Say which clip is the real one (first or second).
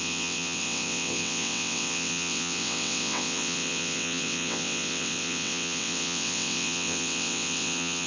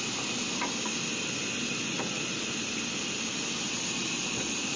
second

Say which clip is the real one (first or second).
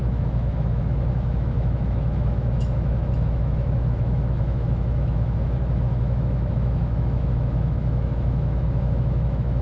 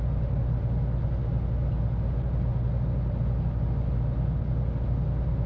second